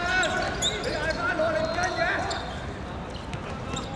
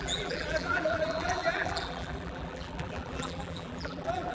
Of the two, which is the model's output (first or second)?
second